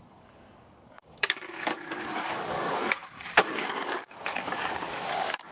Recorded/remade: remade